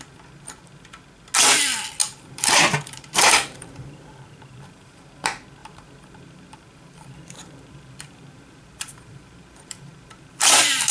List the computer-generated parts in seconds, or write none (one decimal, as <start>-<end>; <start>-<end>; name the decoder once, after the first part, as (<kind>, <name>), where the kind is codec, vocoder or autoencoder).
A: 2.0-5.1 (vocoder, BigVGAN v2); 5.6-10.9